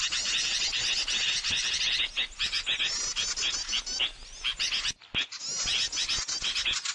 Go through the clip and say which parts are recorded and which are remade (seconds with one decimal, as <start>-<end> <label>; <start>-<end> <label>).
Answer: 0.0-6.9 recorded